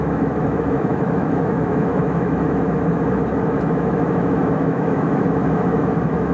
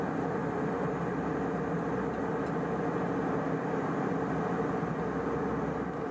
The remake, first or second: first